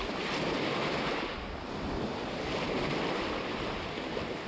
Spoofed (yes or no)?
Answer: no